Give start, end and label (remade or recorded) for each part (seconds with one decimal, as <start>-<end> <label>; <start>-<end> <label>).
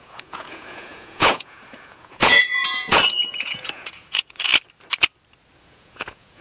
0.0-4.5 remade; 4.5-5.6 recorded; 5.6-6.4 remade